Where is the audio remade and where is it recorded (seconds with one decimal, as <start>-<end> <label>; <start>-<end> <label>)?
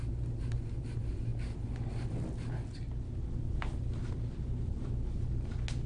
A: 0.0-5.9 recorded